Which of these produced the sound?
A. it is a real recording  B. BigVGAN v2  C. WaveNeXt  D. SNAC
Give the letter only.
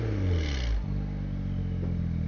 A